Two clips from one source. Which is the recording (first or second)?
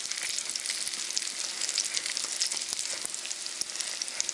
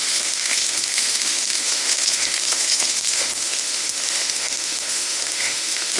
first